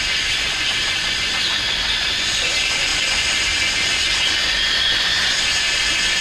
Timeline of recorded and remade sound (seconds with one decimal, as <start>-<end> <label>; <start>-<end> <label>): 0.0-6.2 remade